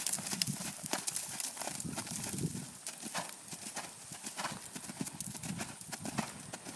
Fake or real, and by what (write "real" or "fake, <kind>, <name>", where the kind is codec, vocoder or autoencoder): real